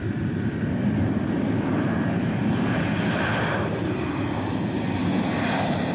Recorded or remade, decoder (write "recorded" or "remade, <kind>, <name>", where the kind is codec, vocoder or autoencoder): remade, vocoder, BigVGAN v2